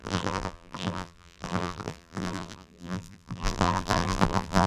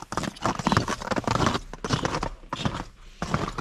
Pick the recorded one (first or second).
second